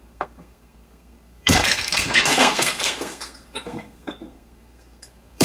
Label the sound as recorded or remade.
remade